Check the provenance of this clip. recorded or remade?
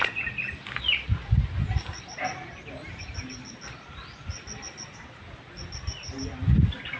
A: recorded